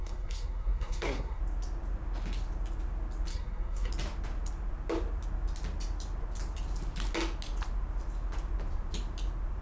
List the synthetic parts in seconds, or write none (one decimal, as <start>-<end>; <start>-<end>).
0.0-1.4; 3.3-3.9

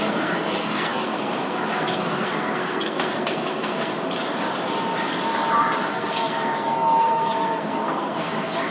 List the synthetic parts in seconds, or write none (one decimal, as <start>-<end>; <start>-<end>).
0.0-3.9; 5.9-8.7

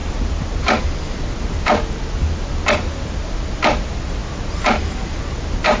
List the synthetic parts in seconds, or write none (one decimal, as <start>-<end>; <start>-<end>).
none

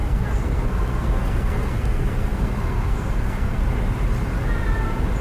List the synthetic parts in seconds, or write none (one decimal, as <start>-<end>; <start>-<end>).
0.0-3.6

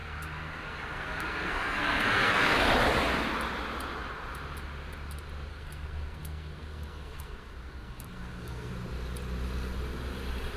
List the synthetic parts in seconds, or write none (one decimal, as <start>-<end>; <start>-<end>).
0.0-2.7; 5.5-8.7